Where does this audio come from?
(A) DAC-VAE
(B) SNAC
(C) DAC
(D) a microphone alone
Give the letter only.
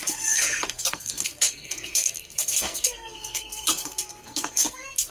B